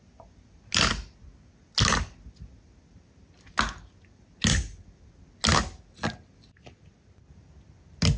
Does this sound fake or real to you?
real